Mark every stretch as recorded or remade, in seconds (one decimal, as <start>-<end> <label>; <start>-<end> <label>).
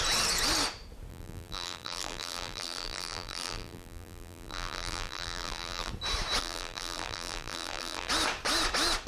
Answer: 0.0-1.1 recorded; 1.1-5.9 remade; 5.9-6.4 recorded; 6.4-8.1 remade; 8.1-9.1 recorded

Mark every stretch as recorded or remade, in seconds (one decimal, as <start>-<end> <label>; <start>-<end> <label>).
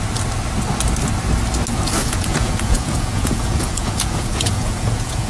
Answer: 0.0-2.0 recorded; 2.0-5.3 remade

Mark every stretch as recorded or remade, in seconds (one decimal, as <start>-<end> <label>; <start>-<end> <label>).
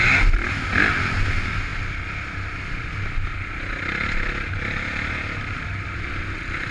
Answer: 0.0-6.7 recorded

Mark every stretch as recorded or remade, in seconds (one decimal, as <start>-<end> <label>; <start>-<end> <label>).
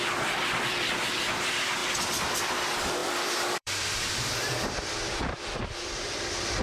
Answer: 0.0-6.6 remade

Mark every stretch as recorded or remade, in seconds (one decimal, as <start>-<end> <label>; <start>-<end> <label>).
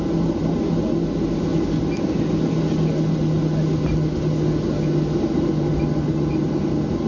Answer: 0.0-7.1 recorded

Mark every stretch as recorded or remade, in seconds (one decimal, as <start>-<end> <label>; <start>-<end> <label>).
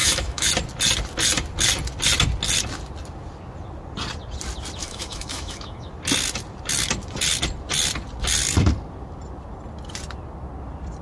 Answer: 0.0-0.5 remade; 0.5-4.8 recorded; 4.8-5.9 remade; 5.9-11.0 recorded